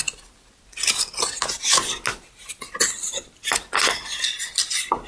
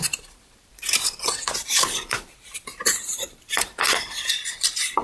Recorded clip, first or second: first